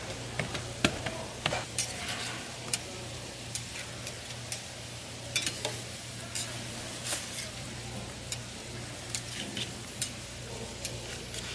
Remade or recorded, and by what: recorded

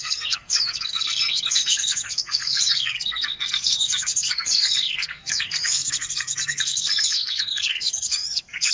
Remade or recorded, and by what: remade, codec, SNAC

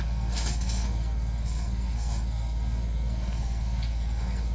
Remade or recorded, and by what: remade, codec, SNAC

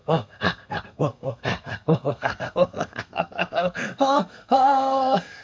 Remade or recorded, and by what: remade, codec, SNAC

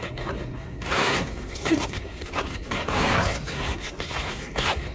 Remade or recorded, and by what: remade, codec, SNAC